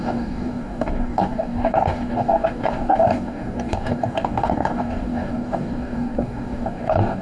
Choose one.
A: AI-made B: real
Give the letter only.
A